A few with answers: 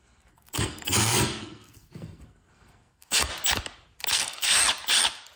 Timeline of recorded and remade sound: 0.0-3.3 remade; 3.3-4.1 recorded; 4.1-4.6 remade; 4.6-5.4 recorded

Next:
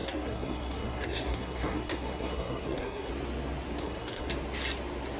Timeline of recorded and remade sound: 0.0-3.1 remade; 3.1-3.8 recorded; 3.8-4.3 remade; 4.3-5.2 recorded

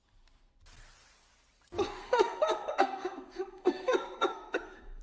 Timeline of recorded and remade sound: 0.0-2.0 recorded; 2.0-5.0 remade

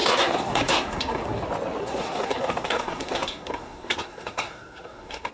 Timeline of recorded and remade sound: 0.0-1.4 remade; 1.4-1.8 recorded; 1.8-5.3 remade

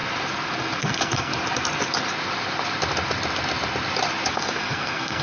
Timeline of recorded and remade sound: 0.0-0.8 recorded; 0.8-1.3 remade; 1.3-4.3 recorded; 4.3-5.2 remade

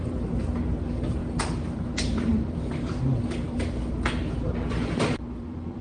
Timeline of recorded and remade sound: 0.0-5.8 recorded

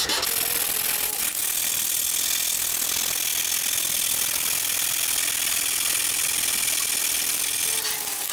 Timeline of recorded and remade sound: 0.0-8.3 recorded

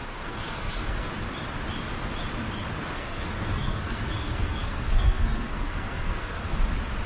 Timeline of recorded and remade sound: 0.0-1.1 remade; 1.1-2.8 recorded; 2.8-6.6 remade; 6.6-7.1 recorded